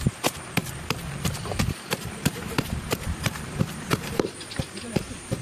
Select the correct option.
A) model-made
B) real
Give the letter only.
A